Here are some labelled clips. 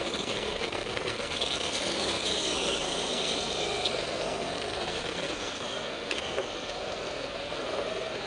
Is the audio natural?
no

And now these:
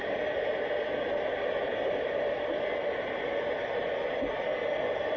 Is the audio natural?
yes